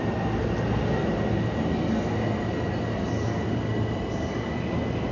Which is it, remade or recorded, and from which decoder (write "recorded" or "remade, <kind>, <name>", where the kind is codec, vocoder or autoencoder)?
recorded